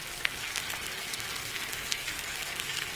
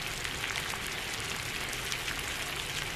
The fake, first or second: first